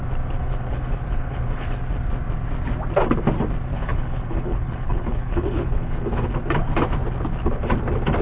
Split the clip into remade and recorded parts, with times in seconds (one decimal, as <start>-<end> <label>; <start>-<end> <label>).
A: 0.0-0.4 recorded; 0.4-1.8 remade; 1.8-3.7 recorded; 3.7-6.3 remade; 6.3-8.2 recorded